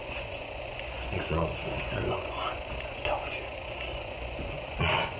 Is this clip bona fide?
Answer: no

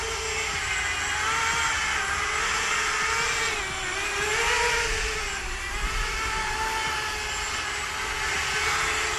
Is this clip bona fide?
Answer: yes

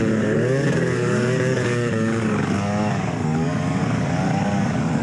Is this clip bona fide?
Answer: no